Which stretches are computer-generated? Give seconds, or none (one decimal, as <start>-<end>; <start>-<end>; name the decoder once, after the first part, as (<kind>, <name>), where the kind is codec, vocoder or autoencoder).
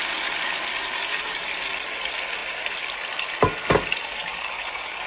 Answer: 4.2-5.1 (codec, DAC)